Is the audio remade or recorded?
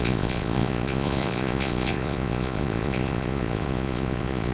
remade